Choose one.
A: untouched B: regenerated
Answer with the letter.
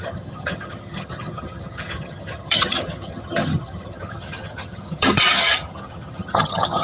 B